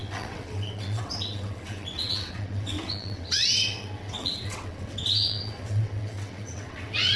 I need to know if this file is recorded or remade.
remade